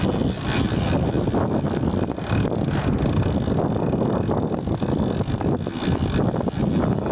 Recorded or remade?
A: recorded